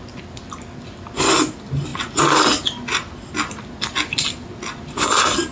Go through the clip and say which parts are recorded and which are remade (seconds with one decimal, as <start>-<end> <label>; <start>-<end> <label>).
0.0-5.5 recorded